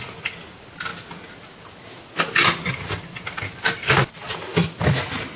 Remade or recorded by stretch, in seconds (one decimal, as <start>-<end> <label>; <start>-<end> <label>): 0.0-4.5 recorded; 4.5-5.0 remade; 5.0-5.4 recorded